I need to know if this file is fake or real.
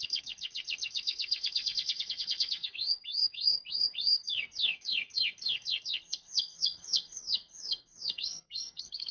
fake